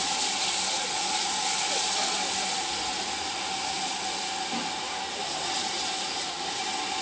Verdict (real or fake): real